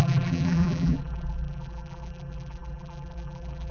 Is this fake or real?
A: fake